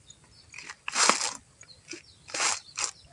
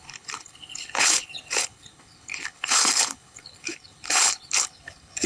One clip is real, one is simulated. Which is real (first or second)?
first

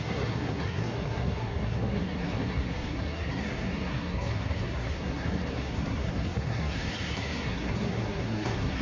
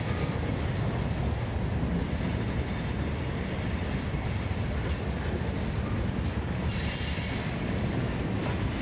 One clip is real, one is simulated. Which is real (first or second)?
second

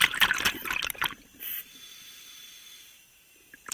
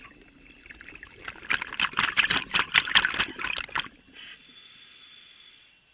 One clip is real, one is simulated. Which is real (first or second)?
second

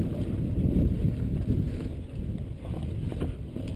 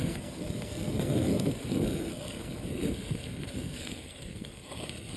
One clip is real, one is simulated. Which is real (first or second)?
first